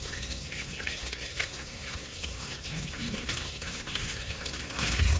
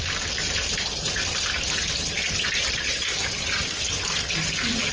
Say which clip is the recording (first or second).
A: second